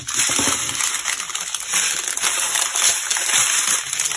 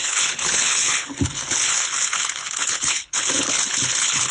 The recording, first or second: first